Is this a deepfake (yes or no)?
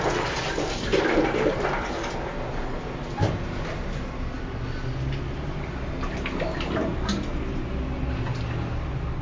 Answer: no